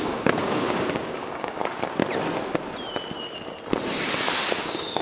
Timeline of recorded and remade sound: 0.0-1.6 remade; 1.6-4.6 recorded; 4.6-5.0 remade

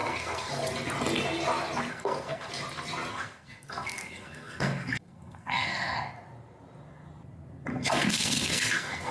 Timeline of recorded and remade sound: 0.0-0.5 remade; 0.5-1.9 recorded; 1.9-2.5 remade; 2.5-3.1 recorded; 3.1-6.1 remade; 6.1-7.7 recorded; 7.7-9.1 remade

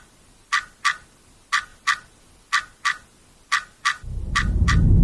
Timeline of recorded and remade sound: 0.0-1.7 recorded; 1.7-2.4 remade; 2.4-5.0 recorded

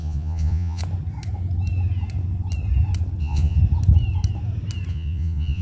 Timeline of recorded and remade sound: 0.0-0.8 remade; 0.8-3.2 recorded; 3.2-3.6 remade; 3.6-4.9 recorded; 4.9-5.6 remade

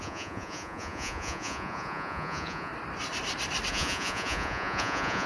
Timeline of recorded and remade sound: 0.0-2.7 remade; 2.7-3.7 recorded; 3.7-5.3 remade

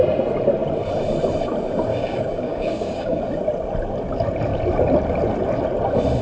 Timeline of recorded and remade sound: 0.0-1.9 recorded; 1.9-3.2 remade; 3.2-6.2 recorded